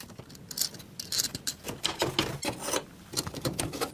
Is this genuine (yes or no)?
yes